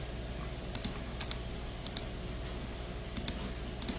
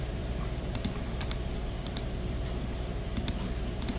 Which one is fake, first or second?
second